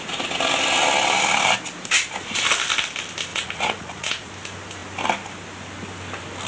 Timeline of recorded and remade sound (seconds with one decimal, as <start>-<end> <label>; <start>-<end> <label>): 0.0-3.3 recorded; 3.3-4.3 remade; 4.3-6.5 recorded